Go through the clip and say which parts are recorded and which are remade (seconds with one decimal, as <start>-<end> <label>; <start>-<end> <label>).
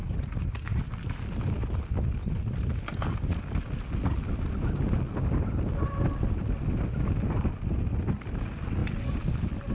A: 0.0-9.7 recorded